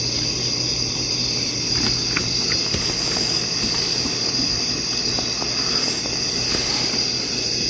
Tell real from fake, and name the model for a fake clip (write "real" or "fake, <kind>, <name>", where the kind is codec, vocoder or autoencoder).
real